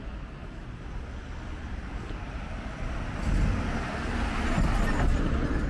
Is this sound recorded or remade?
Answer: recorded